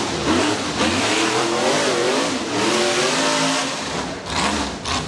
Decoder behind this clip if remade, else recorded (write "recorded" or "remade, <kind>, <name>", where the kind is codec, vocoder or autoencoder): recorded